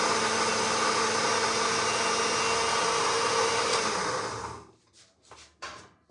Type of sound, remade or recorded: recorded